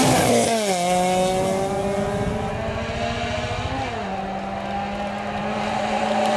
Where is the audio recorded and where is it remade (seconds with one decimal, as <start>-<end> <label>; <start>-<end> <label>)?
0.0-6.4 recorded

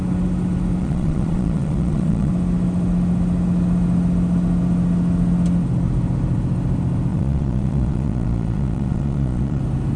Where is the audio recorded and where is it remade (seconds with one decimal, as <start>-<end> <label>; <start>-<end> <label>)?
0.0-0.8 recorded; 0.8-2.3 remade; 2.3-7.1 recorded; 7.1-9.6 remade; 9.6-10.0 recorded

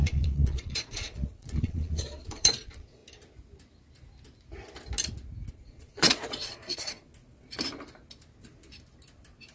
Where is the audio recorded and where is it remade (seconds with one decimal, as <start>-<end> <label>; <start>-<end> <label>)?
0.0-3.0 remade; 3.0-5.5 recorded; 5.5-7.1 remade; 7.1-9.5 recorded

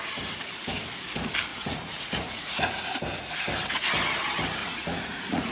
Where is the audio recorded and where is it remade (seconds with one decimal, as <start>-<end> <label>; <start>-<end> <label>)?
0.0-1.5 recorded; 1.5-3.0 remade; 3.0-4.6 recorded; 4.6-5.5 remade

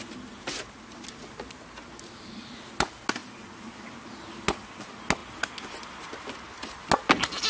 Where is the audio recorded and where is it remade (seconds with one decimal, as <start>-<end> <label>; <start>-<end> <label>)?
0.0-7.5 recorded

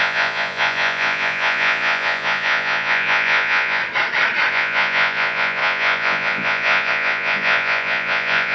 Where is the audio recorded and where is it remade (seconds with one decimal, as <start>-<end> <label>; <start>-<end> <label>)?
0.0-3.8 remade; 3.8-4.5 recorded; 4.5-8.5 remade